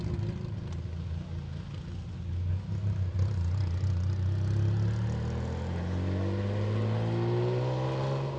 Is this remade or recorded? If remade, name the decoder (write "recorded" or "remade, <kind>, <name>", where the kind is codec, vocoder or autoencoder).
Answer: recorded